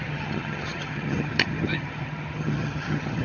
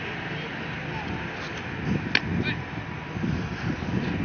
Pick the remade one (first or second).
first